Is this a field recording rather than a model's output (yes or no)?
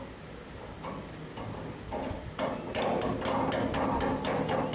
yes